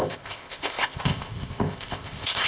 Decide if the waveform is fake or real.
fake